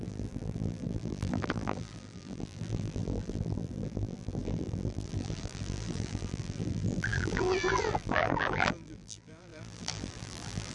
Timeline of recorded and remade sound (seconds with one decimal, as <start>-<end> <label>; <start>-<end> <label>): 0.0-10.7 remade